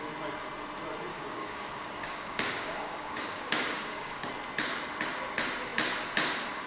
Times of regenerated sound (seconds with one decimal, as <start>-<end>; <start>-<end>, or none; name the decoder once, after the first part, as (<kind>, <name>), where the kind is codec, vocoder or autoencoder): 1.1-4.3 (codec, DAC)